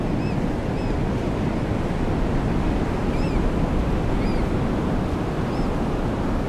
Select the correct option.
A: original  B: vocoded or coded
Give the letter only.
A